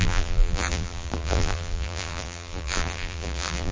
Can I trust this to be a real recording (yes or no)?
no